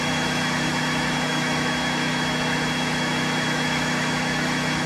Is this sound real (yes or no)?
no